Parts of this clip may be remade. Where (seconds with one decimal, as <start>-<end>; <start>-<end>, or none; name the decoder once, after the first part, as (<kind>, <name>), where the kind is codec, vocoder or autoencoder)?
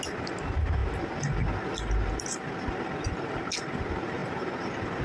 none